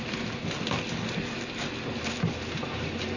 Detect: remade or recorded recorded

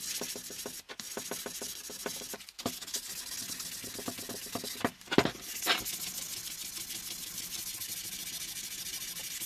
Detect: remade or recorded recorded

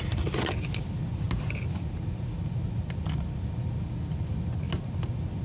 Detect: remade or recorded recorded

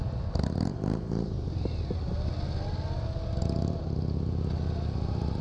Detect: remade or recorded recorded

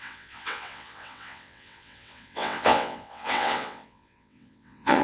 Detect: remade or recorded remade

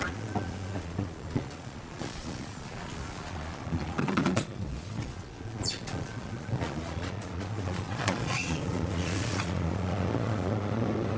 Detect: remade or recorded remade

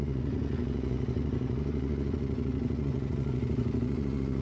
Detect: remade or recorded remade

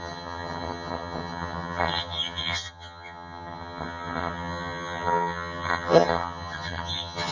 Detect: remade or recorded remade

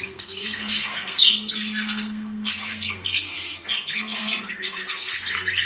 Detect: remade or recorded remade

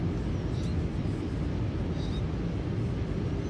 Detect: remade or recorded recorded